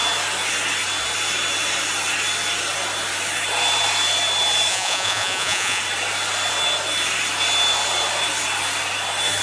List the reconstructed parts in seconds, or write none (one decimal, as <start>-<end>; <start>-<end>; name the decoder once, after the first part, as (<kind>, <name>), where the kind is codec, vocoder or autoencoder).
4.7-5.8 (vocoder, Vocos)